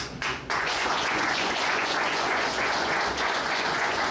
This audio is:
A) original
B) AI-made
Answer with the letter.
B